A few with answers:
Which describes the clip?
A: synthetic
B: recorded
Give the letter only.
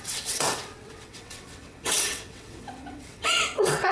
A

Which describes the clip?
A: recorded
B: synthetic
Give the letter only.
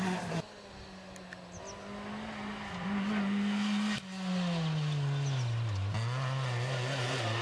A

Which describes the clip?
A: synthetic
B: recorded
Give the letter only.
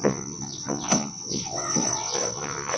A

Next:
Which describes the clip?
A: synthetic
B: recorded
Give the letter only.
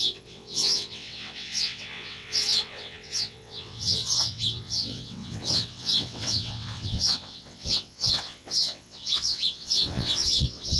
A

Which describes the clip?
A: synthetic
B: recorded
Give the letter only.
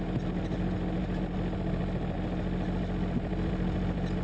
B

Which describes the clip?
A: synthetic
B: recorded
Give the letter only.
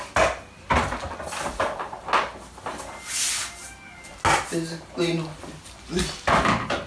B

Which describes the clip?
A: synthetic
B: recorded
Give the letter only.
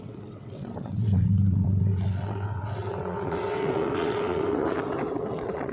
A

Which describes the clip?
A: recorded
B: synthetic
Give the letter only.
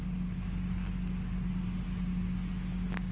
A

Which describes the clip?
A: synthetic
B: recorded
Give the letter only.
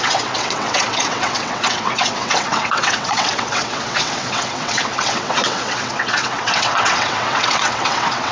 A